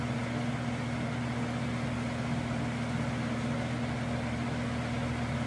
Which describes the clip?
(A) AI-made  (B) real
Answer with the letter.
B